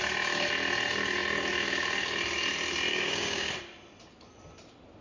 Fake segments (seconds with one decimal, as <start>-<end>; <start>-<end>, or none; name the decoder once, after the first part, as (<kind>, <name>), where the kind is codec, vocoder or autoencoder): 2.9-3.5 (codec, DAC)